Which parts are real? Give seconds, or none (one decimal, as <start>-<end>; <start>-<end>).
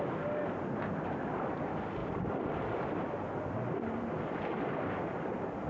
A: 0.0-5.7